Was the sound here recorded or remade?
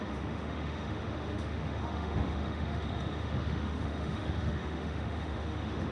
remade